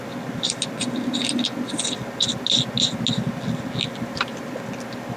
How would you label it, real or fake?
real